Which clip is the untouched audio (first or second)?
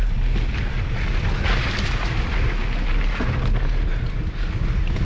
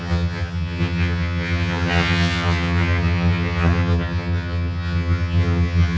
first